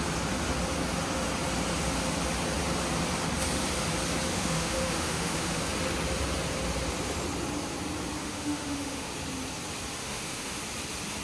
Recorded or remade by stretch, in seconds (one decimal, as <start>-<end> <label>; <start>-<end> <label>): 0.0-4.3 recorded; 4.3-5.6 remade; 5.6-8.2 recorded; 8.2-9.1 remade; 9.1-10.0 recorded; 10.0-10.6 remade; 10.6-11.2 recorded